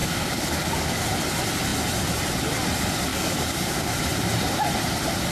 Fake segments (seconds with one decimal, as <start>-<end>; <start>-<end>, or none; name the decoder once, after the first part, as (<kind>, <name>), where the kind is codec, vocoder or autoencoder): 0.0-1.0 (codec, DAC); 3.1-4.0